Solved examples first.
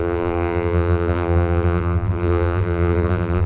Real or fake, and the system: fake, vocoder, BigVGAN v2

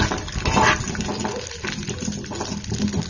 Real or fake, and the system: real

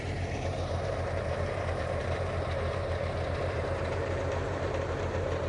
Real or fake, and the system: fake, vocoder, BigVGAN v2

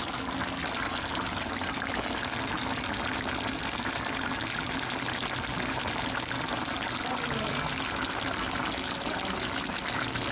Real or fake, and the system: real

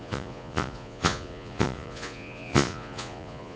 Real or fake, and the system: fake, vocoder, Vocos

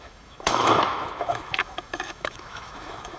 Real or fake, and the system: fake, autoencoder, DAC-VAE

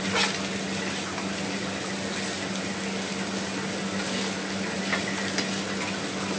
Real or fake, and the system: real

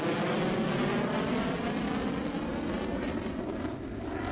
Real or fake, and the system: real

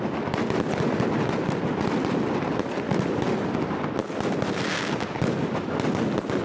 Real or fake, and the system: real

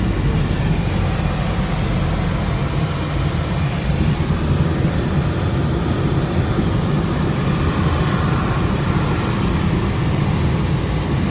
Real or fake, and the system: real